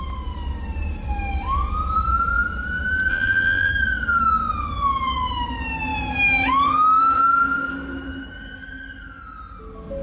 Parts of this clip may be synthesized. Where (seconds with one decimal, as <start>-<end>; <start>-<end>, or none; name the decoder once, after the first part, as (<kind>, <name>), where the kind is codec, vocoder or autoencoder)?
3.1-3.7 (vocoder, BigVGAN v2)